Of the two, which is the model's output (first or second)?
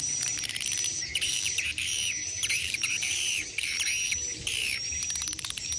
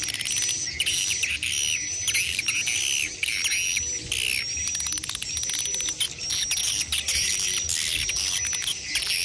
first